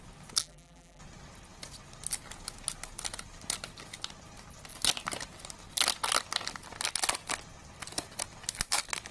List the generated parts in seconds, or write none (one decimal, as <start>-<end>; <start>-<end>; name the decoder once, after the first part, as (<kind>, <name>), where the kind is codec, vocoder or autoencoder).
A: 0.4-1.0 (vocoder, BigVGAN v2)